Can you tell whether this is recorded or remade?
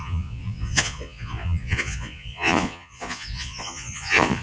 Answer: remade